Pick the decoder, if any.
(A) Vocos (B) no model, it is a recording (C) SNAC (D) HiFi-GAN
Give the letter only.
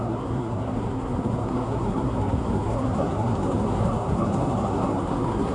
C